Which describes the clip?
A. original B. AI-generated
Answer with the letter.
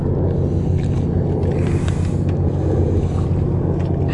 A